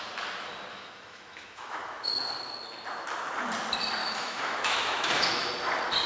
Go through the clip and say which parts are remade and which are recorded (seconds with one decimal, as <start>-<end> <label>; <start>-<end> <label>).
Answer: 0.0-0.7 recorded; 0.7-2.1 remade; 2.1-4.0 recorded; 4.0-5.5 remade; 5.5-6.1 recorded